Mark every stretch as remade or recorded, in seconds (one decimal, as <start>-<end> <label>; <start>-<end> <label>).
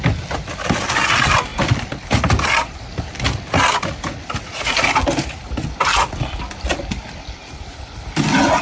0.0-8.6 recorded